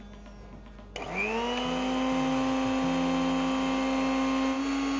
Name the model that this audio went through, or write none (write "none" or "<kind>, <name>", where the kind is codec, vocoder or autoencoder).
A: none